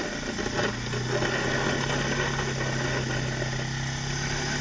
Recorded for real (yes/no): yes